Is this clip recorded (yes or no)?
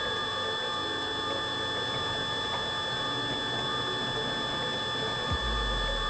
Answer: yes